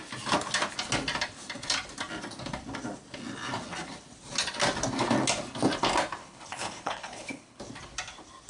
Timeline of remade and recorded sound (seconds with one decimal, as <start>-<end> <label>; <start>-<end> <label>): 0.0-6.2 recorded; 6.2-7.6 remade; 7.6-8.5 recorded